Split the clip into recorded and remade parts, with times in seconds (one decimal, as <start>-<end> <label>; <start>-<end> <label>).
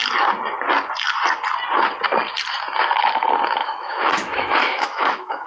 0.0-3.6 recorded; 3.6-5.5 remade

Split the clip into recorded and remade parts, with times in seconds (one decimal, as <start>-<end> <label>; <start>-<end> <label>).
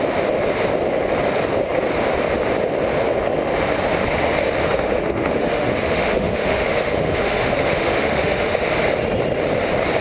0.0-4.6 recorded; 4.6-8.7 remade; 8.7-10.0 recorded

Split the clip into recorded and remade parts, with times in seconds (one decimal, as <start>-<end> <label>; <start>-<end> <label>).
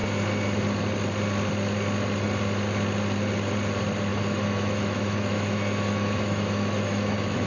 0.0-4.1 recorded; 4.1-7.5 remade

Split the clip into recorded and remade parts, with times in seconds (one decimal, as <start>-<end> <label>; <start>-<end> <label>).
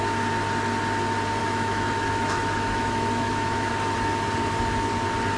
0.0-1.4 recorded; 1.4-3.7 remade; 3.7-5.4 recorded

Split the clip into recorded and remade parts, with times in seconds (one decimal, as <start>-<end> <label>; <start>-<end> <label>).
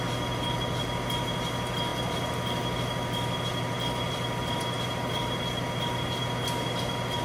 0.0-7.2 recorded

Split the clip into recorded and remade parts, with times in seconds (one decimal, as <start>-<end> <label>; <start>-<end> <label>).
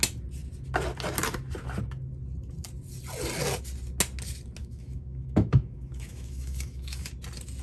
0.0-4.6 recorded; 4.6-7.1 remade; 7.1-7.6 recorded